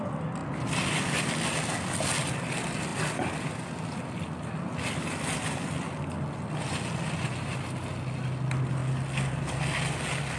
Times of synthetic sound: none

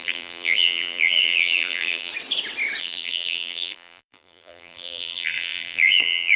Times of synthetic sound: 0.0-2.1 (vocoder, BigVGAN v2); 2.8-6.4

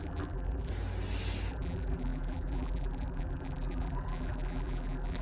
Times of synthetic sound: 0.0-0.7 (vocoder, BigVGAN v2); 1.5-5.2

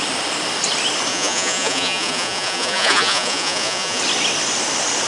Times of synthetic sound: 1.1-4.0 (vocoder, Vocos)

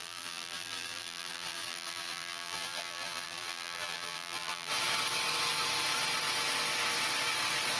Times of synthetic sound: 0.0-4.7 (vocoder, BigVGAN v2)